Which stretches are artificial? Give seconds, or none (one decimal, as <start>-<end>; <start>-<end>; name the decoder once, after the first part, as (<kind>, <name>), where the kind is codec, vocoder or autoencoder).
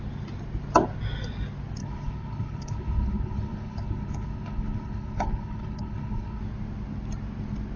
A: 1.8-6.4 (codec, HILCodec)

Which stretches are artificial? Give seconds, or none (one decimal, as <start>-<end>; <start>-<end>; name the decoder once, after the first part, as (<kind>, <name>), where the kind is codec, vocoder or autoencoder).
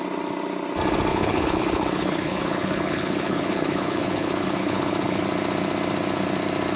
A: 1.1-5.2 (codec, HILCodec)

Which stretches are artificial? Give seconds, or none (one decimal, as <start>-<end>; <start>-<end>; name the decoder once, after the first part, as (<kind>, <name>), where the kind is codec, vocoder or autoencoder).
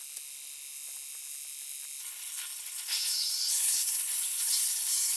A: 2.0-5.2 (codec, HILCodec)